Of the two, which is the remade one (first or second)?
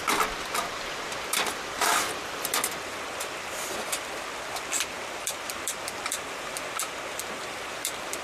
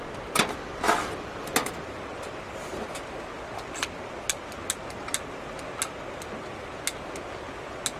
first